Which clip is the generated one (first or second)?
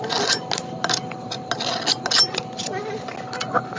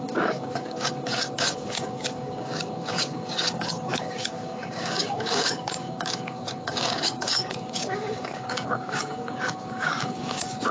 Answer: second